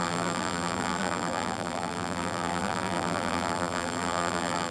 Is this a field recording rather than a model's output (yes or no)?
no